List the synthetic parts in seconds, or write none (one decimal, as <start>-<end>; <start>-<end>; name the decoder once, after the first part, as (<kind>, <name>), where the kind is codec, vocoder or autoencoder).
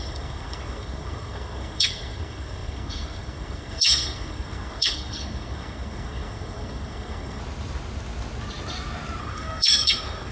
0.0-7.4 (codec, SNAC); 9.2-10.3